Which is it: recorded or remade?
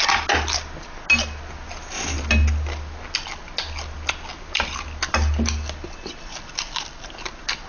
recorded